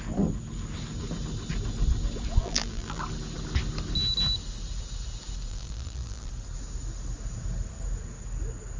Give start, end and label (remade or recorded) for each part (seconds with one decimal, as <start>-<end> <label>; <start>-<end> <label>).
0.0-2.4 recorded; 2.4-3.0 remade; 3.0-5.5 recorded; 5.5-6.3 remade; 6.3-8.8 recorded